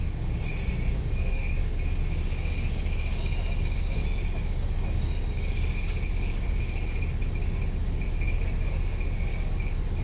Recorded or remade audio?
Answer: remade